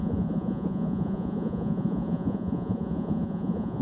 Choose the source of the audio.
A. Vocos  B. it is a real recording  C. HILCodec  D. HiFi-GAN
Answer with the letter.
A